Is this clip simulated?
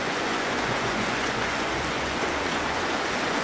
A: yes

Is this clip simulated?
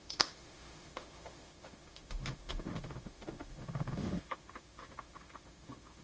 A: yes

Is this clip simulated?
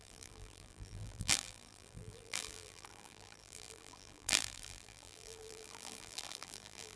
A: yes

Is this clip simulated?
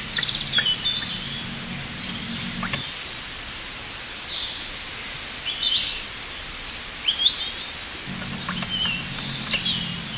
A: no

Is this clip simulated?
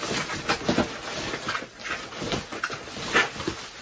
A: no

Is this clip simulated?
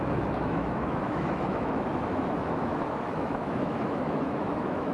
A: yes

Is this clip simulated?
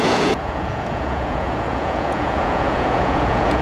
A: yes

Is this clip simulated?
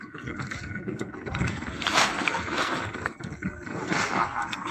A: yes